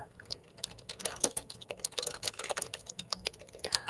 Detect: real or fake fake